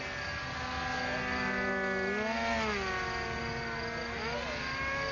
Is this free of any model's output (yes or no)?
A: yes